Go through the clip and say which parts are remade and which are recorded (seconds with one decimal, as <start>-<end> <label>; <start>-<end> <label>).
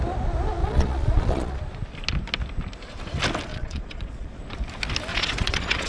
0.0-0.6 recorded; 0.6-1.6 remade; 1.6-3.5 recorded; 3.5-4.4 remade; 4.4-5.1 recorded; 5.1-5.9 remade